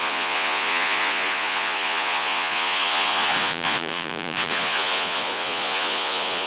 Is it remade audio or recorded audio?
remade